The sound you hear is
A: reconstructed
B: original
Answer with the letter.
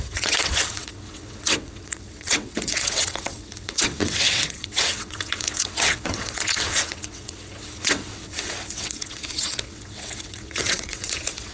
A